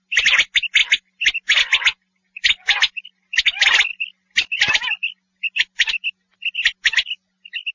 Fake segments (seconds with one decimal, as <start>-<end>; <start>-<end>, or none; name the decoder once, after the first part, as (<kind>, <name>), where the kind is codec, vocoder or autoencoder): none